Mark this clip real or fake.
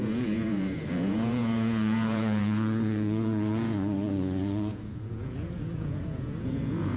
fake